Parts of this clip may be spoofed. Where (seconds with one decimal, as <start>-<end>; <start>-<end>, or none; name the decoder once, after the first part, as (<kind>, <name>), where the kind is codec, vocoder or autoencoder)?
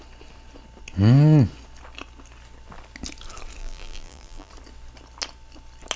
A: 3.6-4.5 (vocoder, BigVGAN v2)